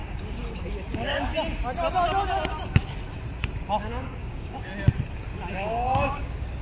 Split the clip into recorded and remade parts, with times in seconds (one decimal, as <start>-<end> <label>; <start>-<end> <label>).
0.0-1.3 remade; 1.3-3.8 recorded; 3.8-4.7 remade; 4.7-5.5 recorded; 5.5-6.6 remade